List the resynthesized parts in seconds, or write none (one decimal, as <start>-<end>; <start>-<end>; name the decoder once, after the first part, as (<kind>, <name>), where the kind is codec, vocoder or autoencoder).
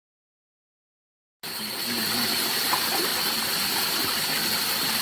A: 1.6-3.1 (vocoder, BigVGAN v2); 4.0-4.4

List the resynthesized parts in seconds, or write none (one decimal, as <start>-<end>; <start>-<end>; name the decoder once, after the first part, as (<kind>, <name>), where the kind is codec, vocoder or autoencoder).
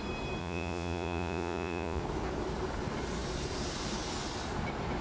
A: 0.4-2.0 (vocoder, Vocos)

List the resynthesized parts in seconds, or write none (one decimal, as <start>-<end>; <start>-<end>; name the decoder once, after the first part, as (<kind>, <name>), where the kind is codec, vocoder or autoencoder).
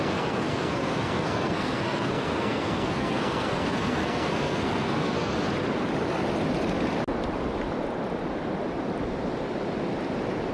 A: 0.0-5.3 (codec, SNAC)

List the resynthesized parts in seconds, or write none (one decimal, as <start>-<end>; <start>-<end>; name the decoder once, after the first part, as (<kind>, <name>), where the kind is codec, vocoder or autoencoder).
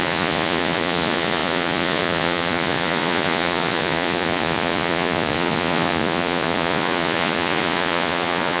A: 0.0-8.6 (vocoder, Vocos)